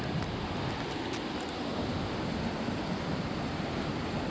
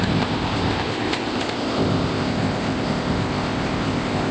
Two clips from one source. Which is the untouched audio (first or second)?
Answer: first